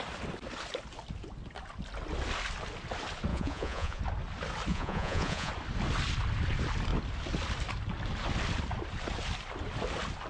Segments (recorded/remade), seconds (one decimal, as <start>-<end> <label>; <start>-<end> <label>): 0.0-3.3 recorded; 3.3-4.0 remade; 4.0-4.7 recorded; 4.7-5.5 remade; 5.5-10.3 recorded